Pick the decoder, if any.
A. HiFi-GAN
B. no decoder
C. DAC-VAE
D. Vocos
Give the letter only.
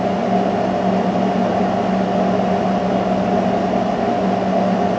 B